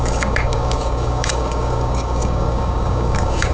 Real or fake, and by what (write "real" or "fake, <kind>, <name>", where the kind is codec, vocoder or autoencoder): fake, codec, DAC